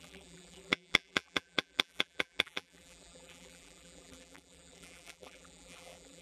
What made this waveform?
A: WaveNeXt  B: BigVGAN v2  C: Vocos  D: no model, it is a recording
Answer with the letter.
B